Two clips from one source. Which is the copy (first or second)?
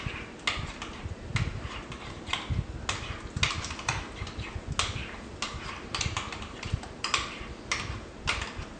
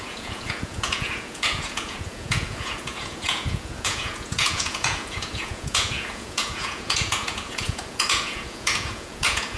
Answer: second